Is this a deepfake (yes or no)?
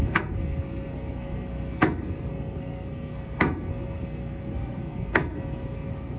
yes